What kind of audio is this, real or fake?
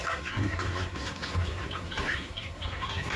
fake